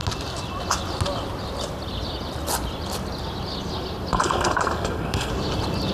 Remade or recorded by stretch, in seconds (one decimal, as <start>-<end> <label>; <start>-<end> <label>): 0.0-4.1 recorded; 4.1-5.3 remade; 5.3-5.9 recorded